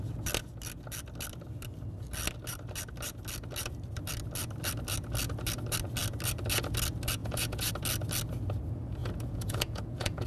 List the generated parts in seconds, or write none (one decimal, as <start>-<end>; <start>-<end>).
7.2-7.7; 9.0-10.3

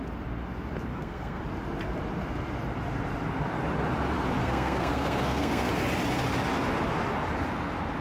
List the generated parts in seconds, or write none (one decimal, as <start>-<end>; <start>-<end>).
0.9-1.4; 4.4-5.7

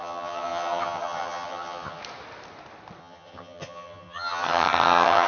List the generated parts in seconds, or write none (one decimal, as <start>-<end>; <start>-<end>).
0.0-2.0; 3.0-5.3

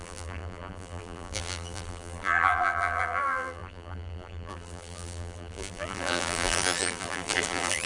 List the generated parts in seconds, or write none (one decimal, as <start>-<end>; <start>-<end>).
0.0-7.9

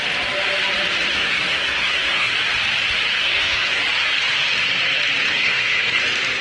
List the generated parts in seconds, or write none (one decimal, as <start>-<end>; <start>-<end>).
1.1-2.3; 3.2-3.8; 5.3-6.0

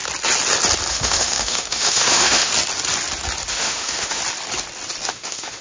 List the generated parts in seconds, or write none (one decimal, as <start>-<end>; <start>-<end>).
0.9-2.5; 3.5-4.2; 5.1-5.6

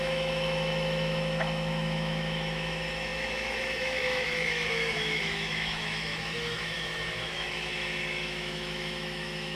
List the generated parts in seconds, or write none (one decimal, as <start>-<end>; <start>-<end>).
0.0-9.6